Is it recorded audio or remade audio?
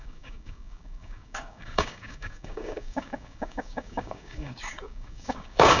remade